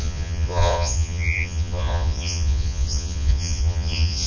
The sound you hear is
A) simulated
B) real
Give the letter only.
A